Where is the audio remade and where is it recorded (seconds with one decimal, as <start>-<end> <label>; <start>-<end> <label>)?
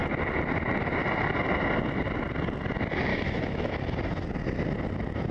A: 0.0-3.1 recorded; 3.1-3.7 remade; 3.7-5.3 recorded